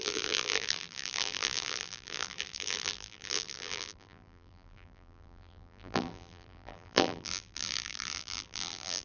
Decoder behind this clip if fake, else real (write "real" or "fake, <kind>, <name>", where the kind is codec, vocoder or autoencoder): fake, vocoder, BigVGAN v2